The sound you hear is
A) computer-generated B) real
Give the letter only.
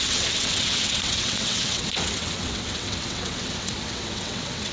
A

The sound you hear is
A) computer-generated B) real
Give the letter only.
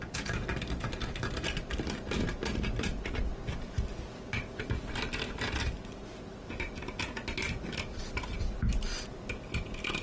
B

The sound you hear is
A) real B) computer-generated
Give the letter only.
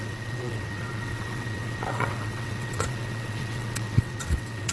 B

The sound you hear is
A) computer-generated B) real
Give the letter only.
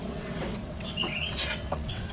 A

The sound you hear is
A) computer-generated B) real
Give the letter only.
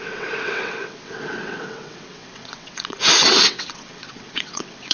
A